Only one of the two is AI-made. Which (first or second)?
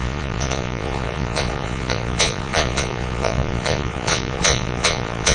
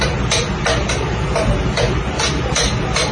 first